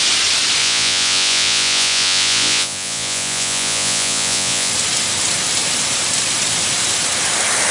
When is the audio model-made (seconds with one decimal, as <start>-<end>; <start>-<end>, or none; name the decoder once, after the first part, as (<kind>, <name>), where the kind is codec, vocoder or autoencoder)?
0.6-4.7 (vocoder, Vocos)